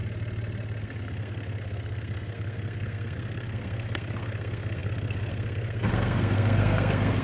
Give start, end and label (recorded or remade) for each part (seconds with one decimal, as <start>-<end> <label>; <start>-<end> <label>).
0.0-0.8 recorded; 0.8-7.2 remade